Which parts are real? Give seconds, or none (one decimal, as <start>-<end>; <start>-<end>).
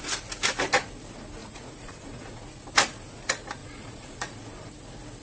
0.0-1.4; 2.4-3.6; 4.7-5.2